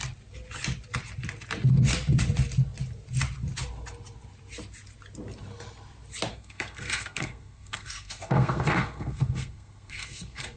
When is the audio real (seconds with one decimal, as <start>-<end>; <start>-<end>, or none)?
0.0-6.3